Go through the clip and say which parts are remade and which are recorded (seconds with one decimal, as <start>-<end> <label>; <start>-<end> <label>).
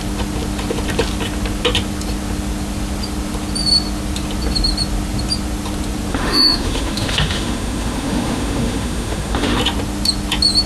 0.0-6.1 recorded; 6.1-9.6 remade; 9.6-10.7 recorded